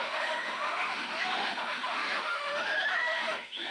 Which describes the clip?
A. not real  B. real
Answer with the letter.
A